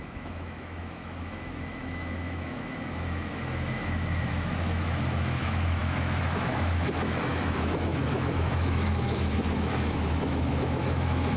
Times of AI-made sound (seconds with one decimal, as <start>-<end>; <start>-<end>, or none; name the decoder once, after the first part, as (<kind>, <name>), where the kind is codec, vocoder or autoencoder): 0.0-11.4 (autoencoder, DAC-VAE)